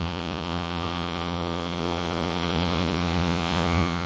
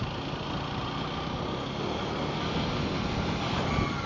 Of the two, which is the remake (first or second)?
first